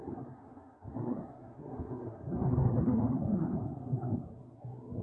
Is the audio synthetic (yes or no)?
yes